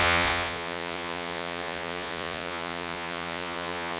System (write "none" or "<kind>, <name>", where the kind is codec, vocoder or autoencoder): vocoder, Vocos